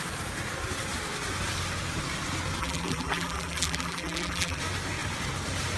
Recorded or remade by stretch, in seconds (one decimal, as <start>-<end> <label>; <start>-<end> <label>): 0.0-2.6 recorded; 2.6-4.6 remade; 4.6-5.8 recorded